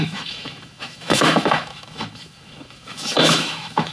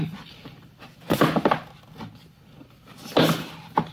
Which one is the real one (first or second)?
second